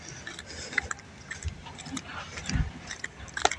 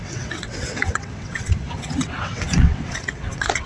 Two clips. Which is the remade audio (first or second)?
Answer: second